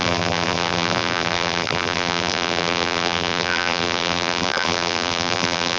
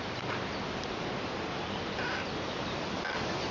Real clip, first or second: second